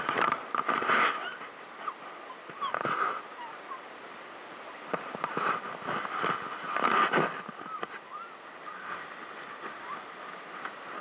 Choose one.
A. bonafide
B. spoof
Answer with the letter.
A